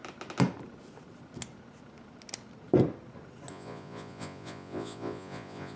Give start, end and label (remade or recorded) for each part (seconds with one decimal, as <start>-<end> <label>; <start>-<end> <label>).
0.0-3.5 recorded; 3.5-5.8 remade